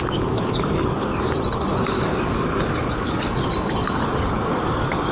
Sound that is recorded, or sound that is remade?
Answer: remade